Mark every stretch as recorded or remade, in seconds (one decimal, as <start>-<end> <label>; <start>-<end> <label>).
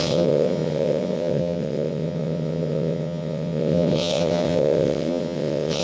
0.0-5.8 remade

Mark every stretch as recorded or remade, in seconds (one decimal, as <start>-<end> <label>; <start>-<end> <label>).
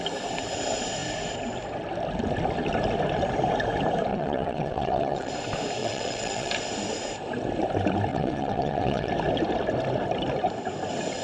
0.0-4.1 recorded; 4.1-5.3 remade; 5.3-5.8 recorded; 5.8-6.5 remade; 6.5-8.1 recorded; 8.1-9.1 remade; 9.1-11.2 recorded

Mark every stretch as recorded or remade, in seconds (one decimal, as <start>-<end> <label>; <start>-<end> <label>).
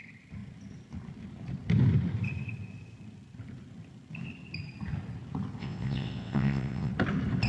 0.0-5.6 recorded; 5.6-6.9 remade; 6.9-7.5 recorded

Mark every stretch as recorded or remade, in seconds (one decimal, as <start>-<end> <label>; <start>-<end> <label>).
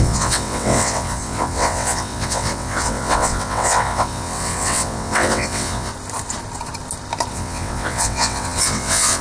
0.0-5.9 remade; 5.9-7.3 recorded; 7.3-9.2 remade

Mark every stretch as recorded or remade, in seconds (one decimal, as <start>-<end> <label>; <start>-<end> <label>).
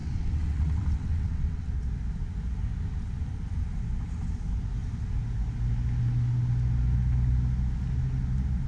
0.0-1.7 remade; 1.7-8.7 recorded